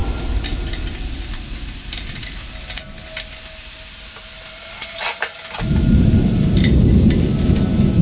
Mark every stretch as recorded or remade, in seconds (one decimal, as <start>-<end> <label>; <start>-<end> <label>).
0.0-8.0 recorded